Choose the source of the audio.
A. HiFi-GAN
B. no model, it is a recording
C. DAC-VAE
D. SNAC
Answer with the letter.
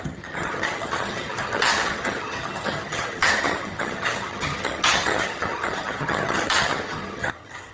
A